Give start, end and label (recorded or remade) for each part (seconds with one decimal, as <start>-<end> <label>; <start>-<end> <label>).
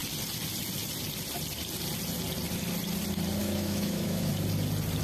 0.0-3.4 recorded; 3.4-4.3 remade; 4.3-5.0 recorded